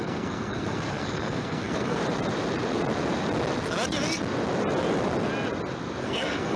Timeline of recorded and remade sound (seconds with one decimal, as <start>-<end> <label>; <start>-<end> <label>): 0.0-2.0 remade; 2.0-6.0 recorded; 6.0-6.6 remade